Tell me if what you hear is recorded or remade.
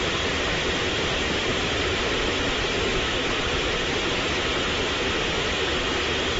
recorded